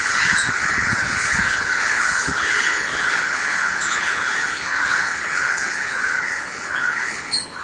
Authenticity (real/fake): fake